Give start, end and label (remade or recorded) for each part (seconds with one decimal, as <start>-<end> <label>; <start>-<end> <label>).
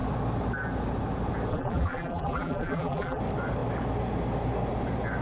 0.0-1.5 recorded; 1.5-3.2 remade; 3.2-5.2 recorded